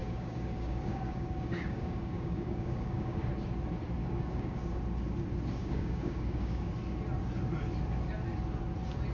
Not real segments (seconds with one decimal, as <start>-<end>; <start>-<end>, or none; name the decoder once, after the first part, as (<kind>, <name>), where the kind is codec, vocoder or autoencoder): 0.0-3.3 (codec, DAC); 4.0-4.8; 5.6-6.7